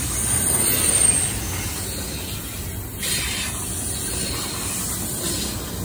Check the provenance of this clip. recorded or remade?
recorded